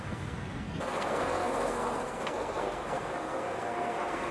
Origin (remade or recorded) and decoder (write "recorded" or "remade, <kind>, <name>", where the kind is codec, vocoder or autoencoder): remade, codec, SNAC